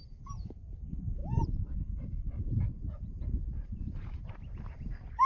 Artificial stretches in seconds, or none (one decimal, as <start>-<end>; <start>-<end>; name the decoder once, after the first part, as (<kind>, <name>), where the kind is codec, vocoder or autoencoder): 1.2-4.4 (vocoder, BigVGAN v2)